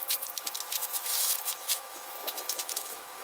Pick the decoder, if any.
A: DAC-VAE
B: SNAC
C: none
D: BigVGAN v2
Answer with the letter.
A